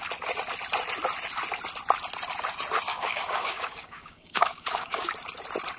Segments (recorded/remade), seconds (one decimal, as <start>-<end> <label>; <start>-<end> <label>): 0.0-2.9 recorded; 2.9-5.1 remade; 5.1-5.8 recorded